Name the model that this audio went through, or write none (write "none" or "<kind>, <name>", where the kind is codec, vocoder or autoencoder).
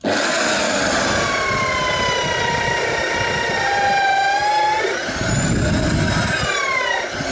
none